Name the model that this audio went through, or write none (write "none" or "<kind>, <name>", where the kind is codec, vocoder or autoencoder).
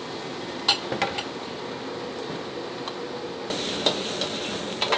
none